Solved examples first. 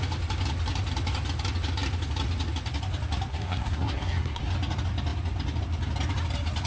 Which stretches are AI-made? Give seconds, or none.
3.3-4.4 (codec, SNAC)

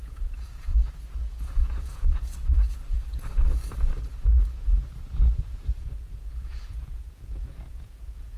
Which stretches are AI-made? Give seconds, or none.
0.0-0.7 (vocoder, Vocos); 1.3-3.4; 4.0-8.4